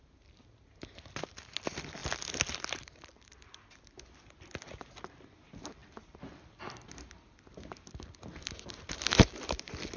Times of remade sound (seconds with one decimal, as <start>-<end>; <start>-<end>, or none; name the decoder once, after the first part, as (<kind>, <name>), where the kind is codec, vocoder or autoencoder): none